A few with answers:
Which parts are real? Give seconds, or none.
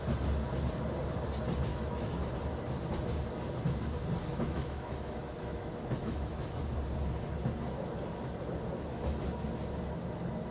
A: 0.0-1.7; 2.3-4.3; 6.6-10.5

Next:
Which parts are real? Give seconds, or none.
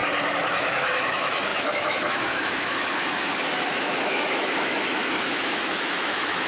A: 0.0-0.5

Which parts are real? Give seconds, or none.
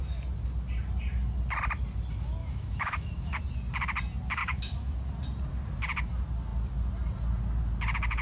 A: 0.0-2.4; 3.4-4.4; 4.9-8.2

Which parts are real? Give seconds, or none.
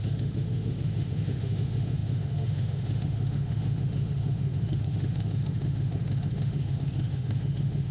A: none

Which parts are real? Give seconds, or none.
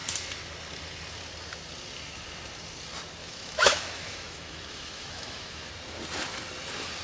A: 0.0-3.2; 5.7-7.0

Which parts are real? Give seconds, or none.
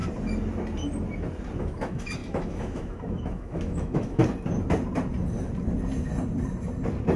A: 0.0-1.6; 4.2-7.2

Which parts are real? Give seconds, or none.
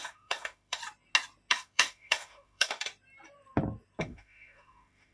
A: 0.8-1.5; 2.9-4.0